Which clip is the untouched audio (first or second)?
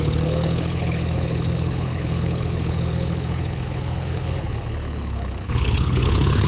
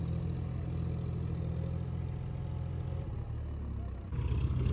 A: second